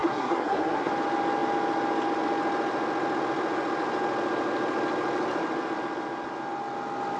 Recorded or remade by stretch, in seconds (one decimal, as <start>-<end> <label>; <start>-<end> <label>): 0.0-0.9 remade; 0.9-7.2 recorded